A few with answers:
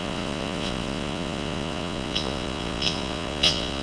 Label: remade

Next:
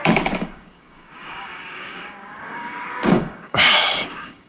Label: remade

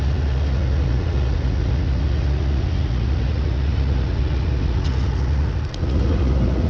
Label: remade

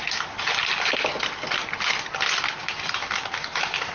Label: recorded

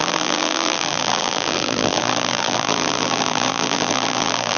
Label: remade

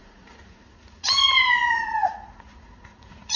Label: remade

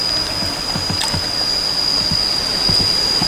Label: recorded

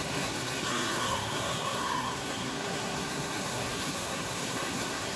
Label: remade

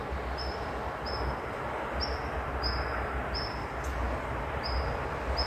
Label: recorded